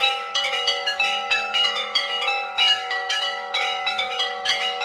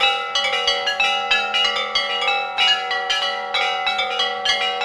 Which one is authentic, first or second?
second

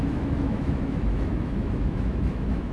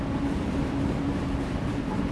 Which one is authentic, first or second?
second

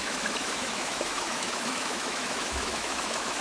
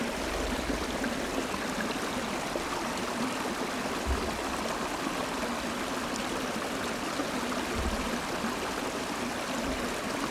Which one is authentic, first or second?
second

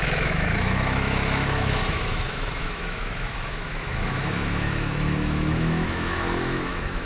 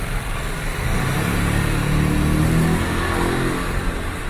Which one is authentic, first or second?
second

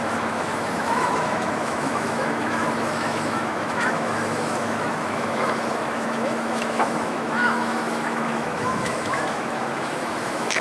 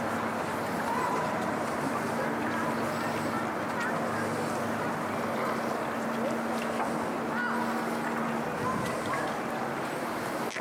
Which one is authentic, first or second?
second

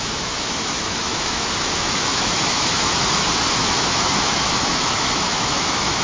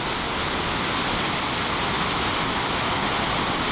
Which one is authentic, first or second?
second